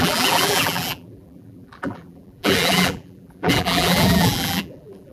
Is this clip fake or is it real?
fake